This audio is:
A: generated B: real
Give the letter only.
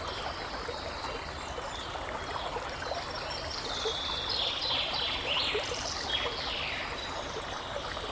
B